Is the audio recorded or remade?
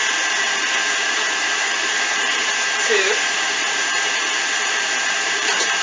remade